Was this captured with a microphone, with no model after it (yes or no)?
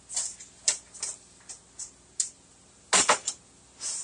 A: yes